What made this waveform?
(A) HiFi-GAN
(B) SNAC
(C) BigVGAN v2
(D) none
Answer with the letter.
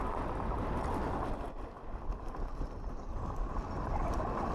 D